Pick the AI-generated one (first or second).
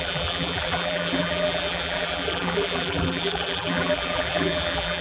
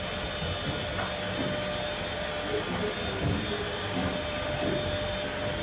first